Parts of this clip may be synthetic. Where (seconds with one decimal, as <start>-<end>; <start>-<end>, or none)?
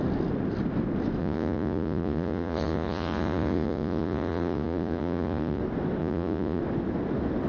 1.2-5.6; 6.0-6.6